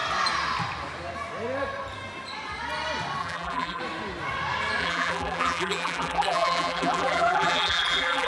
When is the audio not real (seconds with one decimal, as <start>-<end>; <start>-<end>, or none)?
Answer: 3.2-3.8; 4.8-8.3